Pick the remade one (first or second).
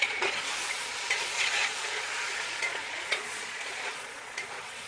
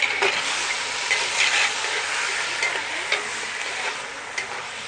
first